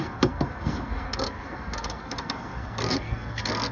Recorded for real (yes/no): no